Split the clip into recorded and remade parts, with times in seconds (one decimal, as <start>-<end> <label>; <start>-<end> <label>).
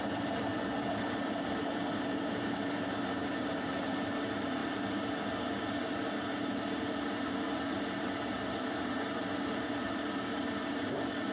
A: 0.0-0.5 remade; 0.5-1.6 recorded; 1.6-4.6 remade; 4.6-5.8 recorded; 5.8-11.3 remade